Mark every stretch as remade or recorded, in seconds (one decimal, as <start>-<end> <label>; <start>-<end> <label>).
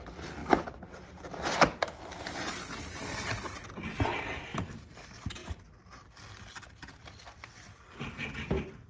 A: 0.0-8.9 recorded